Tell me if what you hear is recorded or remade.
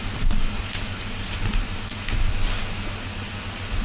recorded